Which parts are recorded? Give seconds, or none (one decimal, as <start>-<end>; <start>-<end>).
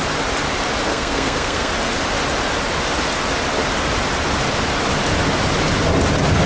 0.0-0.9; 1.7-6.5